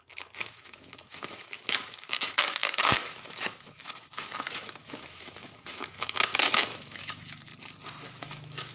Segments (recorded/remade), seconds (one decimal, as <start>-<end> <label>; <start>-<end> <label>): 0.0-7.5 remade; 7.5-8.2 recorded; 8.2-8.7 remade